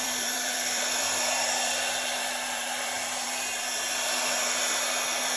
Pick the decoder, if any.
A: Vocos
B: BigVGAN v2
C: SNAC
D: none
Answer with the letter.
B